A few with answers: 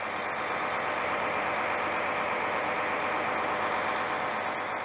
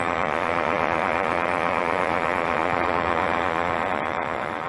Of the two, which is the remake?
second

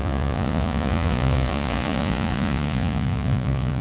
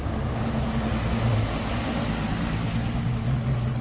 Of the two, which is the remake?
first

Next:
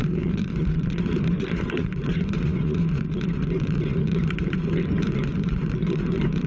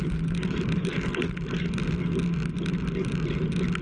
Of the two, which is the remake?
first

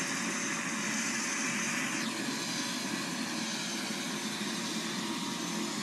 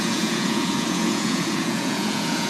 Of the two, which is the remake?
second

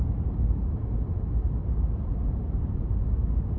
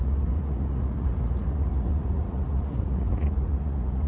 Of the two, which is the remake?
second